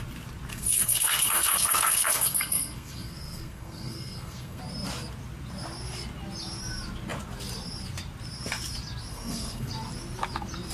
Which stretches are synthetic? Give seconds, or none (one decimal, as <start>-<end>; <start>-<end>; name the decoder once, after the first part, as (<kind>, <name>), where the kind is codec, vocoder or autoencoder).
0.5-4.6 (codec, SNAC); 9.1-9.7